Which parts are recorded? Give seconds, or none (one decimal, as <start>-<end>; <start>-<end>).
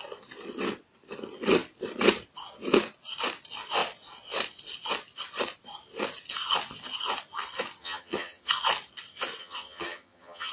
0.0-7.8; 8.5-9.4